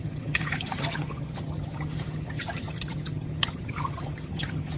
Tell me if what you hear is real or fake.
fake